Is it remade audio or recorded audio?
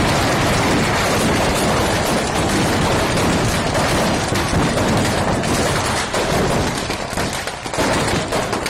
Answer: remade